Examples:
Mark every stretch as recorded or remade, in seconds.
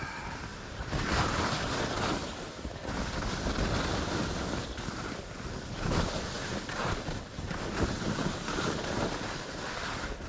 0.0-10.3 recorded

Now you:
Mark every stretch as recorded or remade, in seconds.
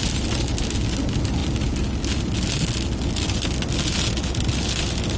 0.0-5.2 recorded